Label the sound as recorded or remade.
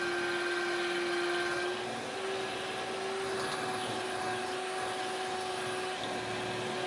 recorded